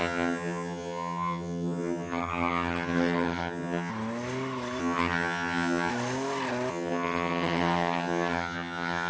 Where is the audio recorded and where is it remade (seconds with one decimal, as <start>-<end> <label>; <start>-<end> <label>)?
0.0-3.9 remade; 3.9-4.8 recorded; 4.8-5.9 remade; 5.9-6.7 recorded; 6.7-9.1 remade